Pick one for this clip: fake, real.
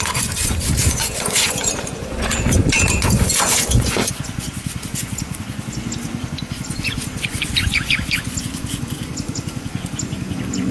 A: fake